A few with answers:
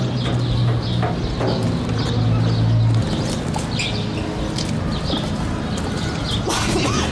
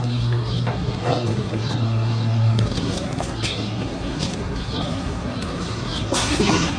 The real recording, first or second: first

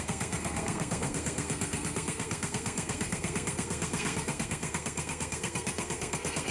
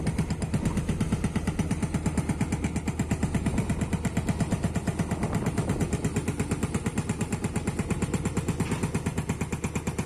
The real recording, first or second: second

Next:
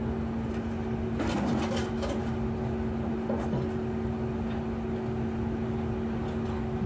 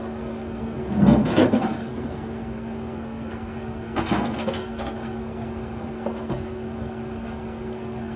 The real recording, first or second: first